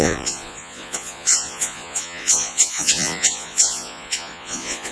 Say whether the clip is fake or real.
fake